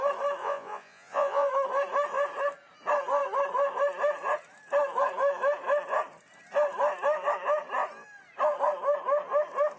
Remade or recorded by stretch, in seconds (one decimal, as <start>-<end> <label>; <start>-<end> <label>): 0.0-0.4 recorded; 0.4-1.5 remade; 1.5-9.8 recorded